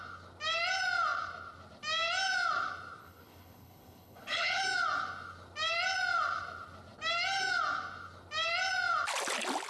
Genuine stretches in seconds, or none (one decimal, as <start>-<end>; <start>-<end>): 0.0-3.0; 4.6-9.7